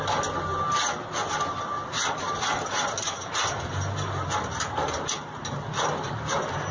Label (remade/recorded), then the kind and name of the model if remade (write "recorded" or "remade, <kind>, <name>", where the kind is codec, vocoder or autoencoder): recorded